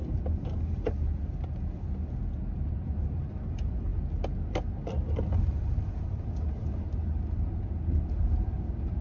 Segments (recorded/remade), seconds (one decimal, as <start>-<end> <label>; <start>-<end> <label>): 0.0-9.0 recorded